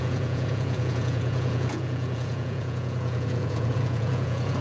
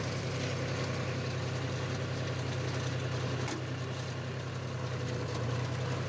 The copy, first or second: first